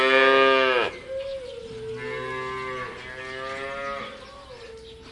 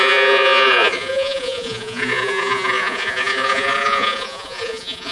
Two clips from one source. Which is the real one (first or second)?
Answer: first